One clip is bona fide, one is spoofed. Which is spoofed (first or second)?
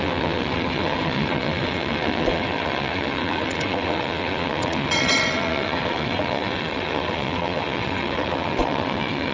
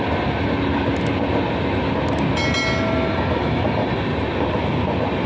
first